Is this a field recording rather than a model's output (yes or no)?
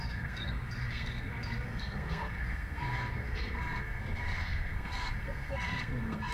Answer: no